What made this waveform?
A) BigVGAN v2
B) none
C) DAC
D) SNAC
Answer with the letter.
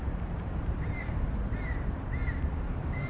A